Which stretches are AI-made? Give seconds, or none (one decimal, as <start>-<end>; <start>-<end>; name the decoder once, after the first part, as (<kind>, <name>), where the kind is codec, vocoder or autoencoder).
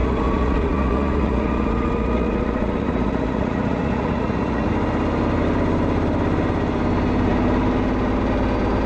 0.0-4.7 (vocoder, Vocos)